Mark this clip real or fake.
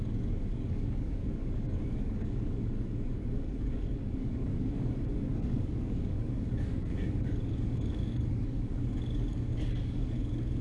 fake